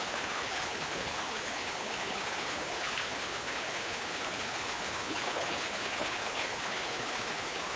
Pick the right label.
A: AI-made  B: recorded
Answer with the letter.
A